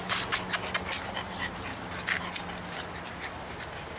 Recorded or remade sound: recorded